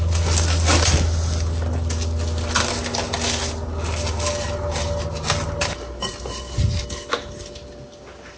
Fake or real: real